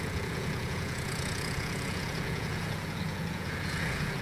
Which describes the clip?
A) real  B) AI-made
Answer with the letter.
B